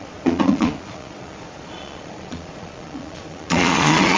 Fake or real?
fake